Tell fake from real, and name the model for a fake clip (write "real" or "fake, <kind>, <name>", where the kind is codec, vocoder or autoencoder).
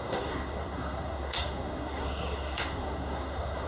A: fake, codec, SNAC